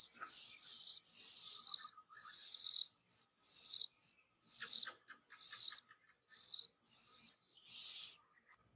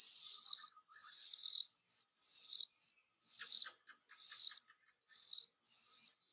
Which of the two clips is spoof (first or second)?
first